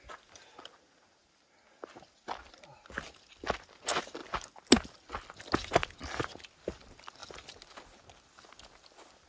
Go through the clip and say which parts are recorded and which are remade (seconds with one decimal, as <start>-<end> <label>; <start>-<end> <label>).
0.0-9.3 recorded